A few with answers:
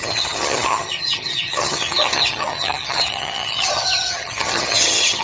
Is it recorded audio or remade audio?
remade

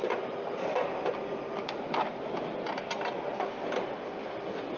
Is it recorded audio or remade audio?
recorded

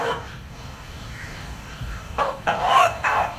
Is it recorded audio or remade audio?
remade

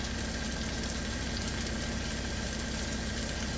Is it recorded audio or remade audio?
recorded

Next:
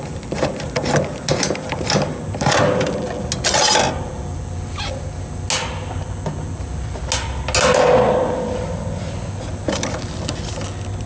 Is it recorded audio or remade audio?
recorded